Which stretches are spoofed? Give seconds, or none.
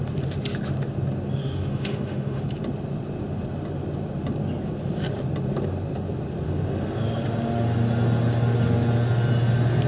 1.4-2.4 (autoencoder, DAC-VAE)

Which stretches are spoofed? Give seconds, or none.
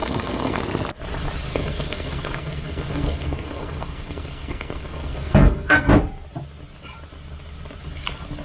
0.0-0.6 (codec, SNAC); 1.5-5.9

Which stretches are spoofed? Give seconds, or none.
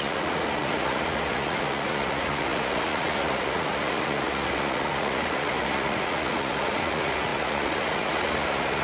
0.0-8.8 (vocoder, Vocos)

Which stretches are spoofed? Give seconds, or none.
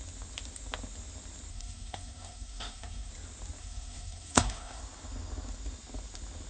1.5-3.1 (codec, SNAC); 3.6-4.8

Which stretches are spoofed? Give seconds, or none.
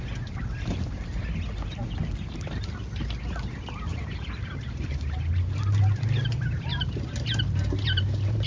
3.9-8.5 (vocoder, BigVGAN v2)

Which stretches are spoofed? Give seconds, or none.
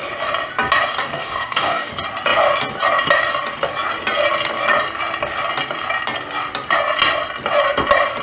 1.0-1.9 (codec, DAC)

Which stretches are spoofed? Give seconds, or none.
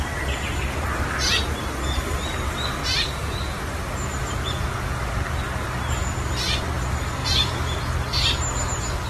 2.8-3.6 (vocoder, Vocos); 4.2-5.2; 7.2-7.8